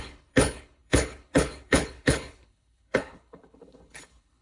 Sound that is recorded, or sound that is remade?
remade